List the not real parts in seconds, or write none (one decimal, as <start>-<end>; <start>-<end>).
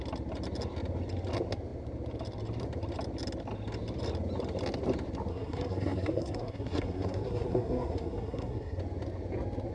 5.3-8.8